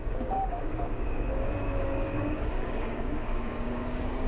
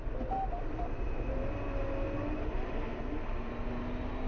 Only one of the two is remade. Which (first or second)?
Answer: first